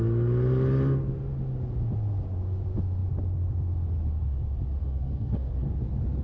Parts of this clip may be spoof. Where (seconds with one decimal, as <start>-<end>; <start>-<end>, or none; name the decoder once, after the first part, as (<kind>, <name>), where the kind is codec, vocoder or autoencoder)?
4.8-5.5 (codec, SNAC)